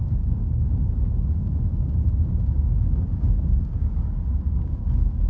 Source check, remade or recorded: remade